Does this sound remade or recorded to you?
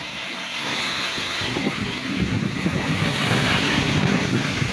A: remade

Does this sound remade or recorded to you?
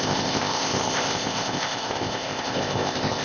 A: remade